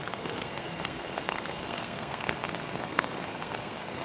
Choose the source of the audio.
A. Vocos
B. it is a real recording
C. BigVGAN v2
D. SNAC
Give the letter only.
D